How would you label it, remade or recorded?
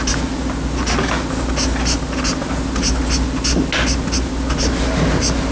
recorded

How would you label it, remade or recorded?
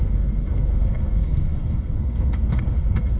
remade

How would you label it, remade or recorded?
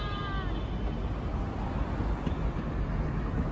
recorded